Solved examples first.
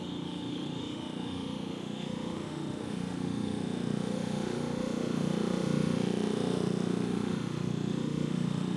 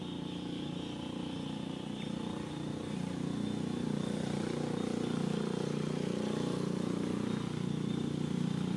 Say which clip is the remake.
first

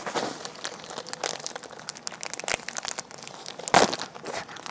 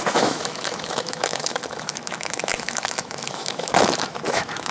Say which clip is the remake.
second